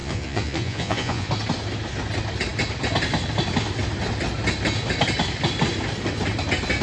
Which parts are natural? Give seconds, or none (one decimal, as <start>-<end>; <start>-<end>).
1.3-6.8